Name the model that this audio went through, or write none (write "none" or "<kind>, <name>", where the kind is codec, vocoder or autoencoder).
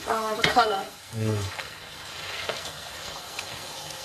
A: codec, SNAC